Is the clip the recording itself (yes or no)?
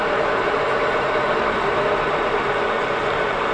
no